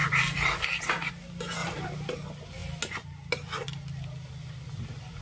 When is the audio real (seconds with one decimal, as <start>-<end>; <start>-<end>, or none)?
1.1-5.2